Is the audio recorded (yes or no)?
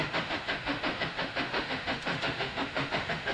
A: no